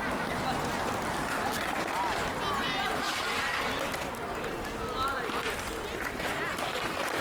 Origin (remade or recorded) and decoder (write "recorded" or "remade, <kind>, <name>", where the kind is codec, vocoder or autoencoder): recorded